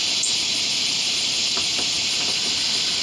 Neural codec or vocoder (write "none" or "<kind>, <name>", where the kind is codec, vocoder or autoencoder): none